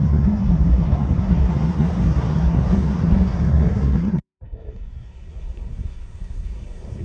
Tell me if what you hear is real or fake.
fake